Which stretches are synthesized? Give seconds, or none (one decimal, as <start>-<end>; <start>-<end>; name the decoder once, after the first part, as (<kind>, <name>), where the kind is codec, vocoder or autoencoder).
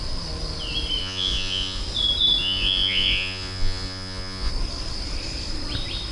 1.0-1.8 (vocoder, Vocos); 2.4-4.5